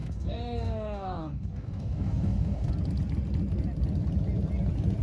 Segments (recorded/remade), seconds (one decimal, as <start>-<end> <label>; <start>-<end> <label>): 0.0-2.7 remade; 2.7-5.0 recorded